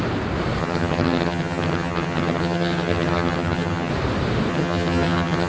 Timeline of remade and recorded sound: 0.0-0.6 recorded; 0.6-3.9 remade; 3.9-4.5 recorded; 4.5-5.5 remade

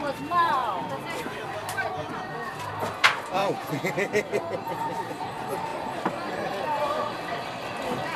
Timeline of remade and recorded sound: 0.0-3.4 recorded; 3.4-3.9 remade; 3.9-8.2 recorded